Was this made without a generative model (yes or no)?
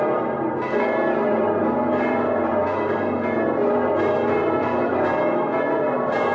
no